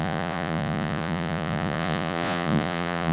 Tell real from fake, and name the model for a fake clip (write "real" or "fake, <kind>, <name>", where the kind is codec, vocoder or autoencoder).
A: fake, vocoder, Vocos